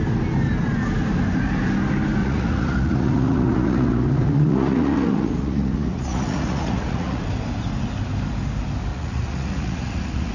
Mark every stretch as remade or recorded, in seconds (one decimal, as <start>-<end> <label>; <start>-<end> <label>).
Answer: 0.0-2.2 recorded; 2.2-7.2 remade; 7.2-8.9 recorded; 8.9-10.3 remade

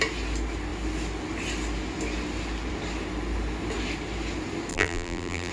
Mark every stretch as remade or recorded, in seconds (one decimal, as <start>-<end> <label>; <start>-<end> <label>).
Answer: 0.0-4.7 recorded; 4.7-5.5 remade